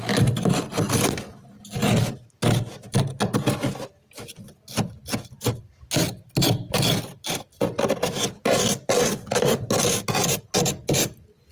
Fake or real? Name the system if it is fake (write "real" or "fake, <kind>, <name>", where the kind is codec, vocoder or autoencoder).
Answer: real